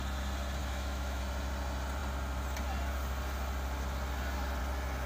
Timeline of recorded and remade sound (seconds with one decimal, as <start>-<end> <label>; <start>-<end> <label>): 0.0-0.6 recorded; 0.6-1.2 remade; 1.2-5.1 recorded